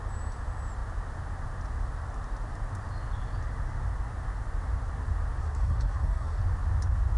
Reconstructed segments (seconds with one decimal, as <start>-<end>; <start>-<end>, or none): 5.4-6.4